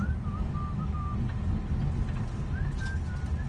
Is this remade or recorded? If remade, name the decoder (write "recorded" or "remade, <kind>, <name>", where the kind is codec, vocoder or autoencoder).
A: recorded